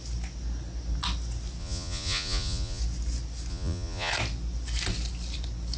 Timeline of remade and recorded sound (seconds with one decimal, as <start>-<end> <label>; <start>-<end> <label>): 0.0-1.6 recorded; 1.6-2.8 remade; 2.8-3.5 recorded; 3.5-4.1 remade; 4.1-5.8 recorded